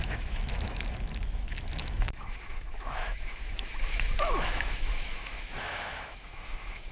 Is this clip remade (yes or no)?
yes